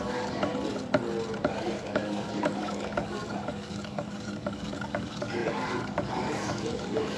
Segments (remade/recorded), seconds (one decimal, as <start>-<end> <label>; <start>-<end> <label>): 0.0-0.5 remade; 0.5-1.5 recorded; 1.5-7.2 remade